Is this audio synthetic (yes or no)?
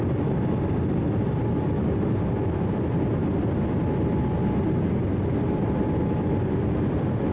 no